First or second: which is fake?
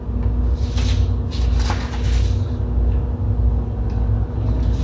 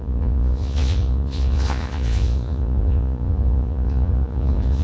second